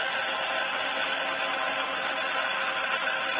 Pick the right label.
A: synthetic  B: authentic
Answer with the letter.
B